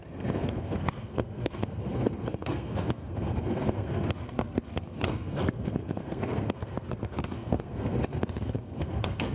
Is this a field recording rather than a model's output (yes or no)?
no